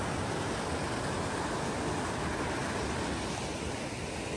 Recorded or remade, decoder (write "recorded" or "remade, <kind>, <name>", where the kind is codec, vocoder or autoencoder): recorded